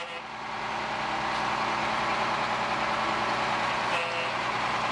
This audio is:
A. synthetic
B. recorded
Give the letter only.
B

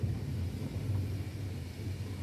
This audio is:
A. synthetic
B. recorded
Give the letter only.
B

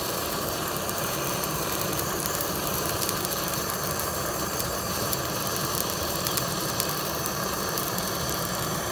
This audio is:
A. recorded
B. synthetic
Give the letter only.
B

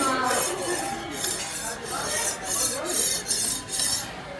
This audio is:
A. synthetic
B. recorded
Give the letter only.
B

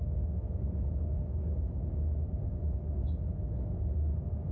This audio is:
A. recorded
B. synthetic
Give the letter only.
A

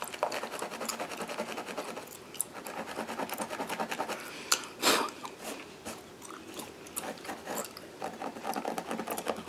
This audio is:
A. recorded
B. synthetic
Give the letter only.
A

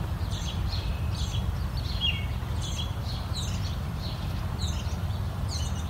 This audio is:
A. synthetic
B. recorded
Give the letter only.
B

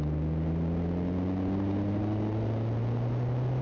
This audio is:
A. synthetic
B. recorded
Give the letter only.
B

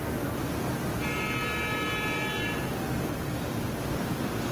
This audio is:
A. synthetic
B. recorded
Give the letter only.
B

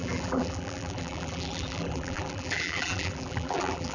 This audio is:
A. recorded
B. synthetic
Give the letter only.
B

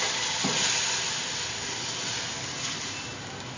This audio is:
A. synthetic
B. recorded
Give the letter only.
B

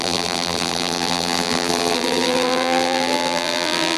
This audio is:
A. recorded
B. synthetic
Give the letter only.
B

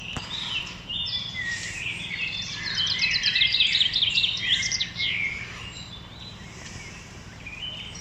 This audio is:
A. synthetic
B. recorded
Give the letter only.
A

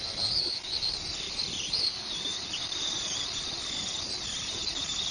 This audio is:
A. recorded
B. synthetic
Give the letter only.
B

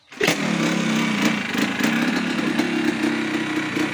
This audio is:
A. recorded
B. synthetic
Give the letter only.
A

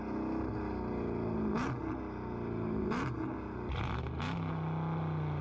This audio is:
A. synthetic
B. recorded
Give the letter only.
B